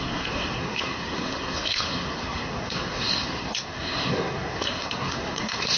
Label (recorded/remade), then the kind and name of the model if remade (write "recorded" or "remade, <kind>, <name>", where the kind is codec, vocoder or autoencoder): remade, codec, SNAC